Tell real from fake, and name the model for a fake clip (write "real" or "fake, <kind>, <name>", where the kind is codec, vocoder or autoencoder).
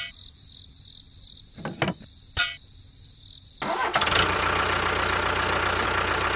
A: real